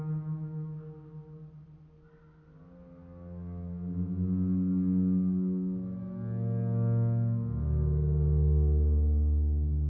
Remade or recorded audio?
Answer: recorded